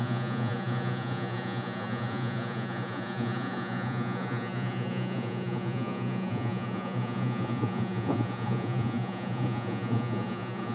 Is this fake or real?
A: fake